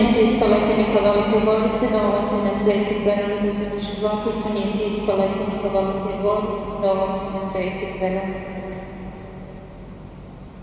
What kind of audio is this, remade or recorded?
recorded